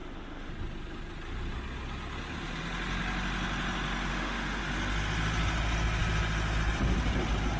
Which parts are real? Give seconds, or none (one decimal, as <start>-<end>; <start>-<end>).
0.5-4.1; 4.6-7.6